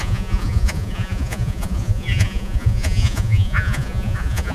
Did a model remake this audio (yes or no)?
yes